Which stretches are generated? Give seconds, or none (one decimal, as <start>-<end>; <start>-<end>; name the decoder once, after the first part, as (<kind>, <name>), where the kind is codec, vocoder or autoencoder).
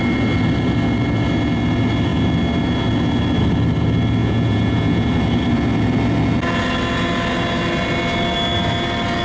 4.2-5.1 (vocoder, Vocos)